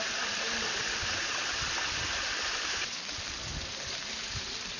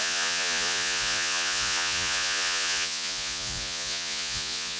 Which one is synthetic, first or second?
second